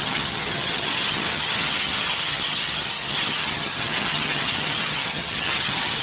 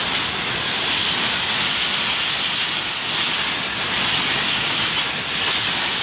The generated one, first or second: first